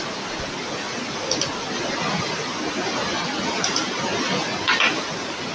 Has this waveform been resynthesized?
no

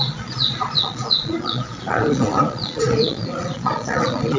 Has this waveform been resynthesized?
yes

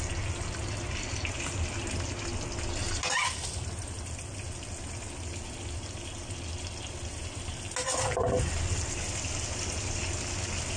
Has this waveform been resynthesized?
no